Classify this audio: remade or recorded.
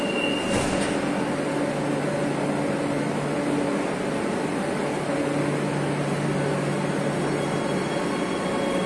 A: recorded